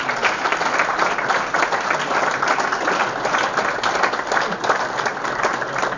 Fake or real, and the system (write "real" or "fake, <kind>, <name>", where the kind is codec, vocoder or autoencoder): real